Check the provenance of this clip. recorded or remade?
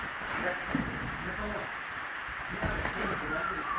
recorded